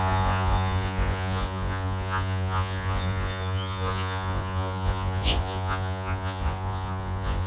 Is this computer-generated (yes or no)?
yes